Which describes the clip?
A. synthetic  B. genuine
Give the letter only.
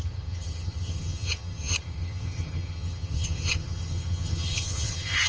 A